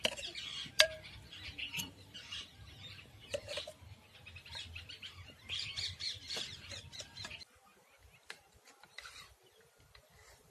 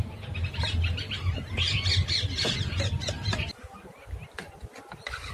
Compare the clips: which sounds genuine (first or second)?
second